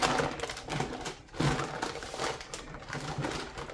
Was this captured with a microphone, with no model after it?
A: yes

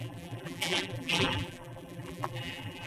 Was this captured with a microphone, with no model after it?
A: no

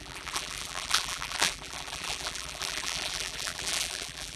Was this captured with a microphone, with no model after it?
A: no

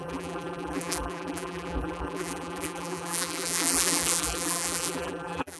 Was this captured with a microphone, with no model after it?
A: no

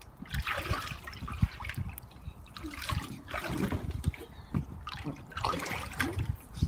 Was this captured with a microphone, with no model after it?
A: yes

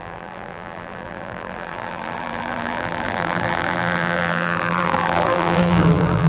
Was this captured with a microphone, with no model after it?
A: no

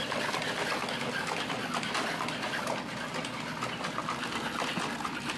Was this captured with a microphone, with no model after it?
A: yes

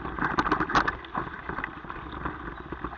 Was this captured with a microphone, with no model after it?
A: yes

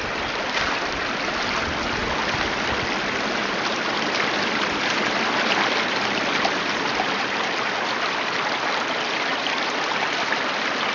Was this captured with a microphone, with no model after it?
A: yes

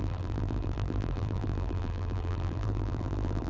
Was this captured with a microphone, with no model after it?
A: no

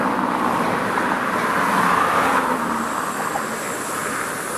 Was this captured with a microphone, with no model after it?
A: yes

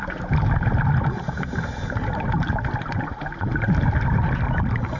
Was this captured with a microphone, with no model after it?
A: yes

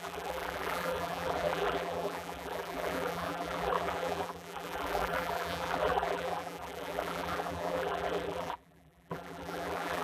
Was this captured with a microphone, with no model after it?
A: no